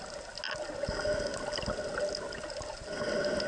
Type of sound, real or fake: real